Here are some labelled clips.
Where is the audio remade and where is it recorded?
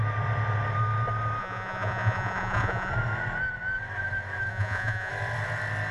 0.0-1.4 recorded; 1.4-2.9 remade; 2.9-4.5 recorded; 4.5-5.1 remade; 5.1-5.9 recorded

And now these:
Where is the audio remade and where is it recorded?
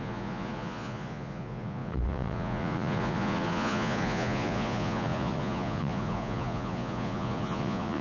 0.0-8.0 remade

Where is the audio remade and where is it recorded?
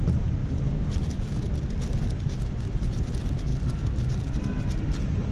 0.0-5.3 recorded